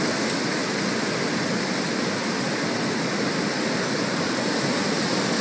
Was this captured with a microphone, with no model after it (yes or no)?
yes